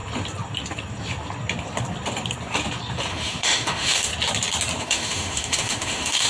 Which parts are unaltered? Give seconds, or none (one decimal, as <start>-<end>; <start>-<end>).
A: 0.0-3.1; 4.1-4.8

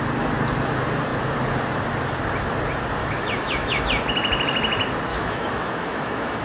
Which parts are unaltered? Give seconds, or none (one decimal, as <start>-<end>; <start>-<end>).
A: 0.0-3.0; 3.8-5.1

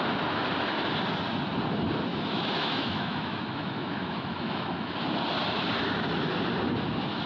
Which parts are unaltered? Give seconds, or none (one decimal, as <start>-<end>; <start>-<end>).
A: 0.0-2.1; 4.9-7.3